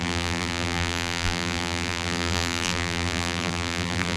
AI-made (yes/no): yes